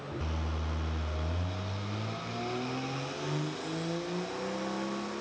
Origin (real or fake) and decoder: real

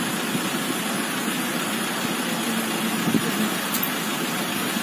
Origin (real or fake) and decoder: real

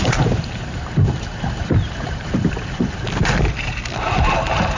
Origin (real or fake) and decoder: fake, vocoder, BigVGAN v2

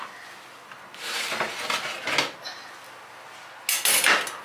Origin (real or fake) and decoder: real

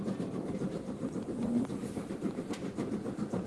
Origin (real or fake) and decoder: fake, vocoder, BigVGAN v2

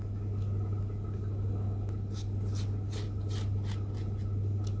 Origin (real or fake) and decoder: real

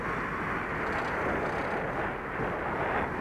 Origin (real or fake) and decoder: real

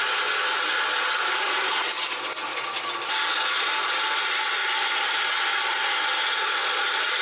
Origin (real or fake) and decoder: real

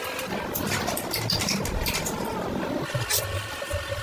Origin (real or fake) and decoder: real